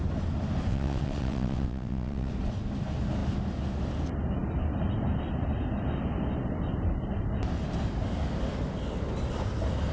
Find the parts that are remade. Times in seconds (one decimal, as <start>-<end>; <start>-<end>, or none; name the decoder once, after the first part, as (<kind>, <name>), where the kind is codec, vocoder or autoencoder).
0.7-2.3 (vocoder, WaveNeXt)